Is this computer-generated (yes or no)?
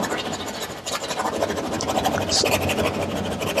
yes